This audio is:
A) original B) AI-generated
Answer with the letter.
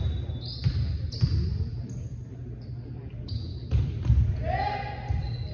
A